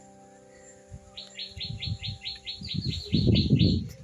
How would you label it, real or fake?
real